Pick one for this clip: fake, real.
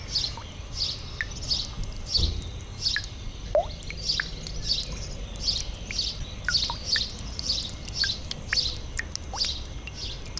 real